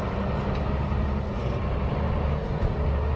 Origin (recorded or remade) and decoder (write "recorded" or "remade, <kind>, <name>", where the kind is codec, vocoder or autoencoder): recorded